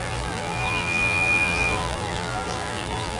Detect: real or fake fake